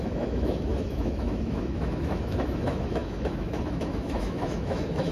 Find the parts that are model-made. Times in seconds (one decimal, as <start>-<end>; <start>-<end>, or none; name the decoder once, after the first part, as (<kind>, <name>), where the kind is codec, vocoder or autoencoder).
0.0-5.1 (autoencoder, DAC-VAE)